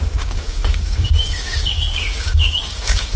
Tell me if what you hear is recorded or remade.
remade